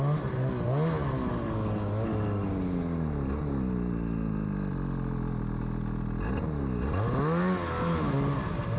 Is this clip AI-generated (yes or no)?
no